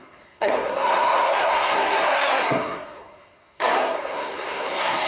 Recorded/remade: remade